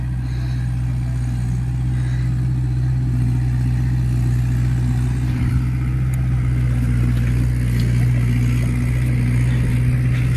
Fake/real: real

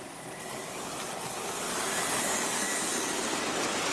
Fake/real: real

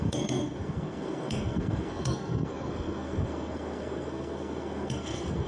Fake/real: fake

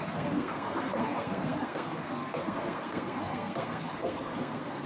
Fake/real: fake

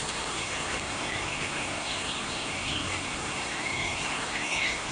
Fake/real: fake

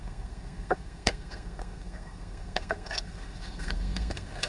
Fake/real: fake